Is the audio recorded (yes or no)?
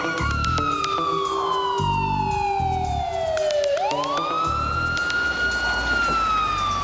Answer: yes